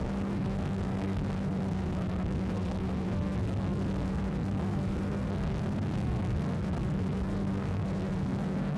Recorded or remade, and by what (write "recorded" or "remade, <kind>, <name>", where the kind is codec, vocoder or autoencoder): remade, codec, SNAC